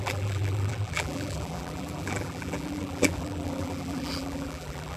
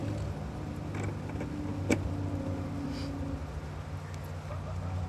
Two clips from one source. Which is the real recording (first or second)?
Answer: second